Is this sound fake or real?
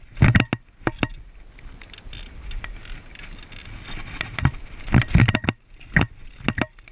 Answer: real